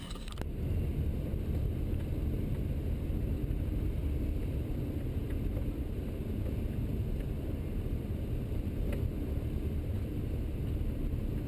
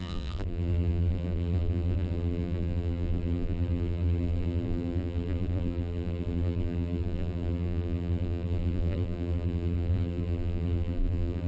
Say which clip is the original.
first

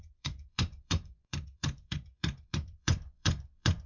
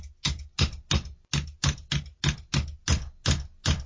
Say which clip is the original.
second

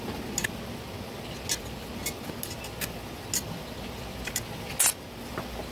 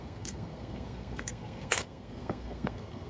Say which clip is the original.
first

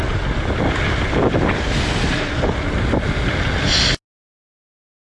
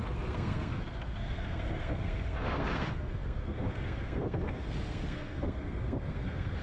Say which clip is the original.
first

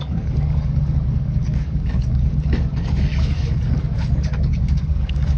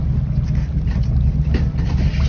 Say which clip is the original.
second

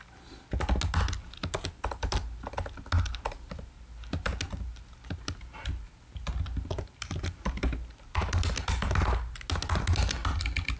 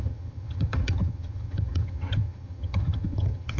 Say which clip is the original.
first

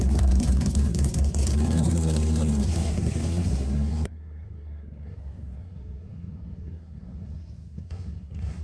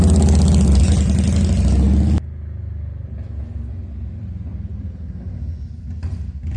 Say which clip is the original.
second